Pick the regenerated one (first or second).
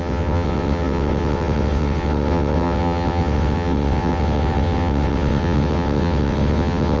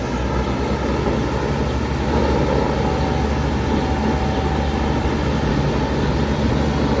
first